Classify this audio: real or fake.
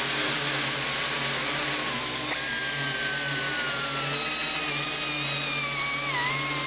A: real